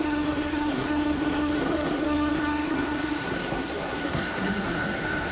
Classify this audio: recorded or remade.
remade